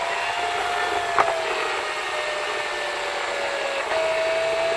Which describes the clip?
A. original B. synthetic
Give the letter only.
A